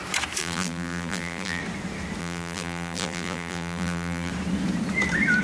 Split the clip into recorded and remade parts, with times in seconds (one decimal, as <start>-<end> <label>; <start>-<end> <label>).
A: 0.0-0.4 recorded; 0.4-1.6 remade; 1.6-2.2 recorded; 2.2-4.3 remade; 4.3-5.4 recorded